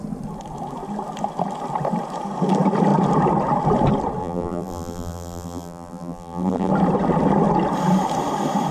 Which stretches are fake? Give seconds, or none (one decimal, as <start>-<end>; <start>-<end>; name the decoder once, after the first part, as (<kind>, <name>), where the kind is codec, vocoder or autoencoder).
4.2-6.7 (vocoder, BigVGAN v2)